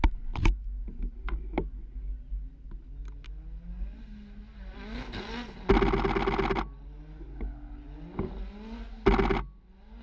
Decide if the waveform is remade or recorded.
recorded